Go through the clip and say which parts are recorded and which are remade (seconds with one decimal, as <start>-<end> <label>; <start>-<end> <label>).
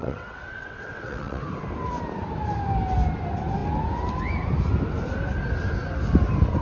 0.0-1.4 remade; 1.4-6.6 recorded